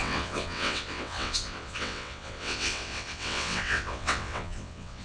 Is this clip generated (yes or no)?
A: yes